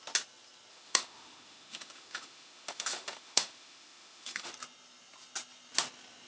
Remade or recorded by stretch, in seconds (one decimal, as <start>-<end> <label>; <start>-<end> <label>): 0.0-0.7 recorded; 0.7-4.5 remade; 4.5-6.3 recorded